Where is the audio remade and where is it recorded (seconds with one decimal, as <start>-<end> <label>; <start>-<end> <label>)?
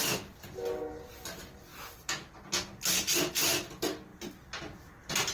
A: 0.0-5.3 recorded